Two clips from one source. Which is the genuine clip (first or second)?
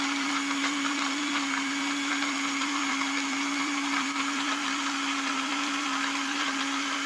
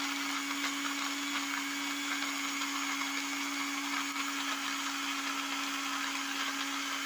second